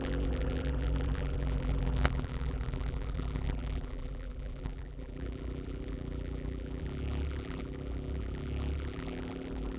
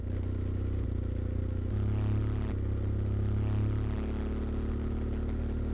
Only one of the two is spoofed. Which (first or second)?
first